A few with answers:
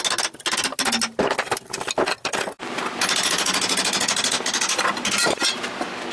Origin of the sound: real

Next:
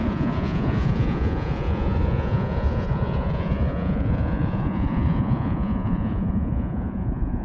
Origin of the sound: fake